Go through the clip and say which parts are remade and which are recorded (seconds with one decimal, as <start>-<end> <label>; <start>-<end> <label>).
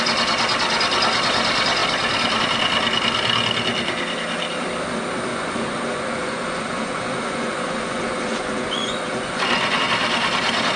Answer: 0.0-5.3 recorded; 5.3-9.8 remade; 9.8-10.8 recorded